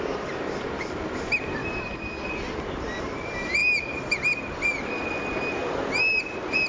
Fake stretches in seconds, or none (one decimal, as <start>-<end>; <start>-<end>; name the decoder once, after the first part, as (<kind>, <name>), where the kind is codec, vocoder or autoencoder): 0.0-1.6 (vocoder, BigVGAN v2); 3.0-5.6; 6.1-6.7